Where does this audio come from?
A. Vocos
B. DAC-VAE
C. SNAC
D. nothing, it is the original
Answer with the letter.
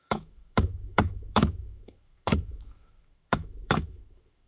B